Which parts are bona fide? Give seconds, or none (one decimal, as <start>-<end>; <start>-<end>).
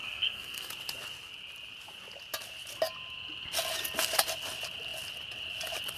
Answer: 0.7-6.0